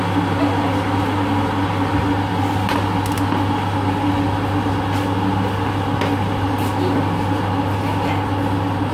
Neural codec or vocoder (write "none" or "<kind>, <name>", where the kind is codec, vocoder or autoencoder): none